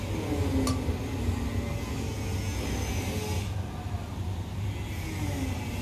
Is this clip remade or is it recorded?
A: recorded